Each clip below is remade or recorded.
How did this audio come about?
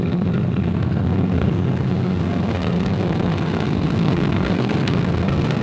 remade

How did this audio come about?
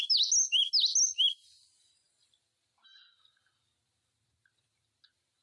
recorded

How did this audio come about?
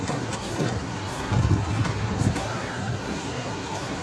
remade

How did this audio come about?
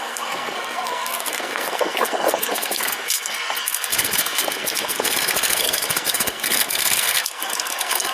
remade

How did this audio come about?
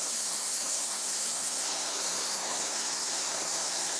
remade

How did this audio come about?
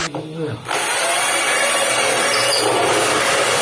recorded